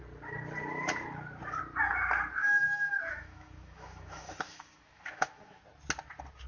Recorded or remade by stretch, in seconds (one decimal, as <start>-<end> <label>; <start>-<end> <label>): 0.0-2.4 recorded; 2.4-5.6 remade; 5.6-6.5 recorded